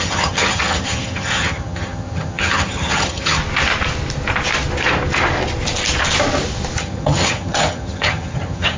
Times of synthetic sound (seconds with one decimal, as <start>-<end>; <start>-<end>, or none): 0.0-3.4; 6.8-8.8